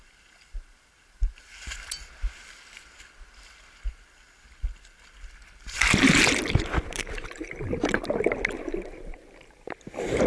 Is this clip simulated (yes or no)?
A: no